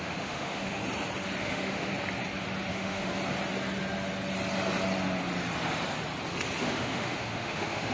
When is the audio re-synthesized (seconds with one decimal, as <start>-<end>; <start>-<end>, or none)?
0.0-0.8; 1.4-1.9; 2.7-3.1; 6.6-7.9